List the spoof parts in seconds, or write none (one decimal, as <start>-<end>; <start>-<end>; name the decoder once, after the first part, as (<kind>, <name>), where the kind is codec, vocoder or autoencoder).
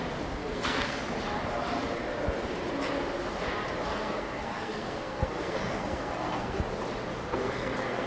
0.4-1.0 (codec, SNAC); 3.9-6.6; 7.3-8.1